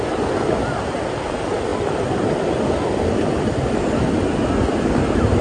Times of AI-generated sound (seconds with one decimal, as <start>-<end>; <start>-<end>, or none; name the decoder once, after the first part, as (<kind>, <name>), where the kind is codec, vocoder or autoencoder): none